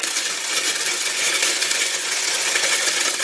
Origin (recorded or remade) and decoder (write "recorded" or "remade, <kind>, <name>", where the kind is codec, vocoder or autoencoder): remade, vocoder, Vocos